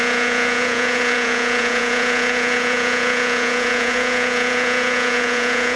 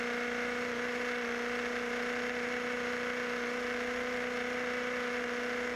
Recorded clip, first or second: second